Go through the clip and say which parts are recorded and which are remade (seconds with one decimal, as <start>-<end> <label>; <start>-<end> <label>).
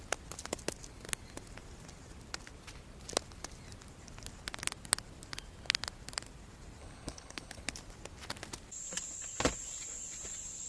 0.0-6.8 recorded; 6.8-7.6 remade; 7.6-10.7 recorded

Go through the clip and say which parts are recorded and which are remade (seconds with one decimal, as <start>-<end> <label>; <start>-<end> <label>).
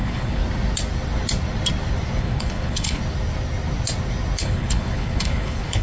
0.0-0.4 remade; 0.4-2.2 recorded; 2.2-3.0 remade; 3.0-4.4 recorded; 4.4-5.8 remade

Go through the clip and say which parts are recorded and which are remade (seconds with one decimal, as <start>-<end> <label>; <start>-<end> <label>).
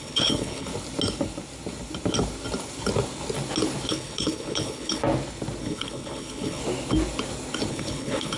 0.0-0.7 remade; 0.7-3.9 recorded; 3.9-5.0 remade; 5.0-5.6 recorded; 5.6-6.6 remade; 6.6-7.7 recorded; 7.7-8.4 remade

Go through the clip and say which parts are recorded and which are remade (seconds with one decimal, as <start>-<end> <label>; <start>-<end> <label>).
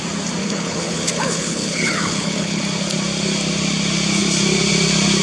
0.0-0.4 recorded; 0.4-2.6 remade; 2.6-5.2 recorded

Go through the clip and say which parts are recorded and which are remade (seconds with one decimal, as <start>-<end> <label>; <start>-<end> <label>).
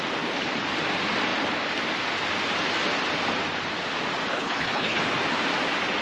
0.0-4.3 recorded; 4.3-5.0 remade; 5.0-6.0 recorded